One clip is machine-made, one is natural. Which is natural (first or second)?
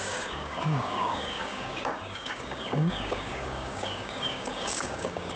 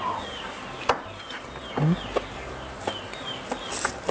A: second